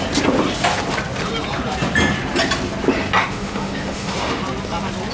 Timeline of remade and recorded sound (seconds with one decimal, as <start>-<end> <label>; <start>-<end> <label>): 0.0-3.2 recorded; 3.2-4.4 remade; 4.4-5.1 recorded